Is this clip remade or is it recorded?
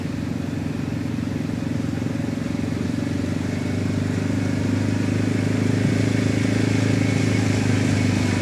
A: recorded